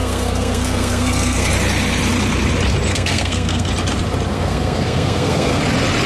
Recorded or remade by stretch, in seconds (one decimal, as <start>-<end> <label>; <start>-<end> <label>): 0.0-1.5 remade; 1.5-2.9 recorded; 2.9-3.7 remade; 3.7-4.3 recorded; 4.3-5.6 remade; 5.6-6.1 recorded